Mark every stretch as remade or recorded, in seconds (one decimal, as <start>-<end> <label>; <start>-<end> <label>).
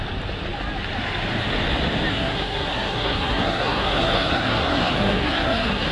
0.0-2.1 recorded; 2.1-5.9 remade